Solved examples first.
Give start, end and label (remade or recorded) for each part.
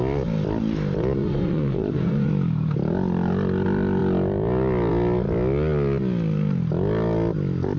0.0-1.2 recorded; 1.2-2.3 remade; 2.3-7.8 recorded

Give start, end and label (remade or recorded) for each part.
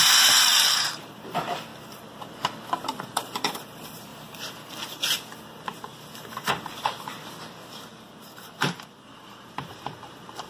0.0-1.7 remade; 1.7-3.0 recorded; 3.0-10.5 remade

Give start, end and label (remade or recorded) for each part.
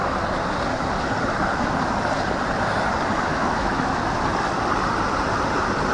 0.0-3.3 recorded; 3.3-4.0 remade; 4.0-5.9 recorded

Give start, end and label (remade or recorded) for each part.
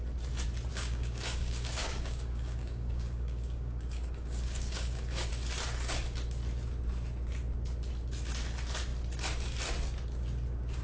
0.0-0.7 recorded; 0.7-5.3 remade; 5.3-10.8 recorded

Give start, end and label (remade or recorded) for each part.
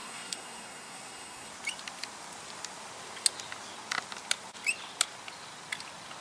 0.0-1.5 remade; 1.5-6.2 recorded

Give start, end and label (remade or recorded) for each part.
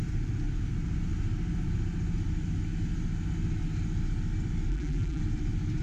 0.0-4.7 recorded; 4.7-5.2 remade; 5.2-5.8 recorded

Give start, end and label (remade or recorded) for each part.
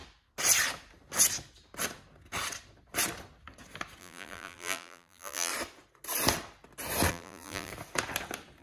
0.0-4.0 recorded; 4.0-5.5 remade; 5.5-7.1 recorded; 7.1-7.7 remade; 7.7-8.6 recorded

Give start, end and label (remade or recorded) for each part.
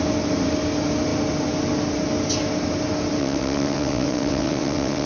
0.0-3.2 recorded; 3.2-5.1 remade